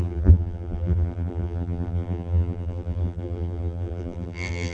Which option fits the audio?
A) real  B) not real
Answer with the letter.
B